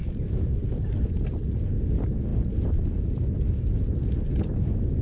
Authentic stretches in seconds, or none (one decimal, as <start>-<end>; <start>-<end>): 1.0-2.3; 3.1-5.0